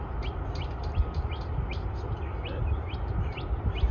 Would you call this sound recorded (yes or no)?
yes